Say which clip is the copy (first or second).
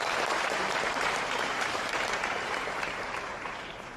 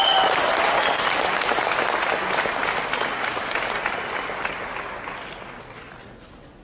first